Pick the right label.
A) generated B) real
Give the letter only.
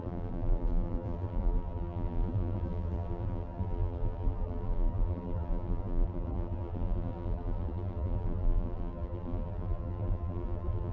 A